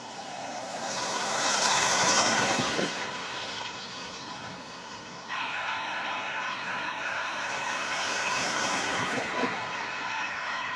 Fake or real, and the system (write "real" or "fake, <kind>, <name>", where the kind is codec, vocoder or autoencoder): fake, codec, SNAC